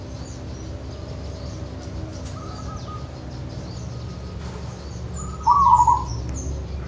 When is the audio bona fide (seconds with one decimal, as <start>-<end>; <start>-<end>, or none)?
0.0-6.9